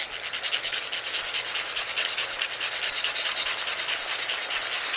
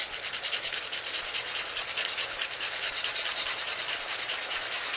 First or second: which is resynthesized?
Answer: second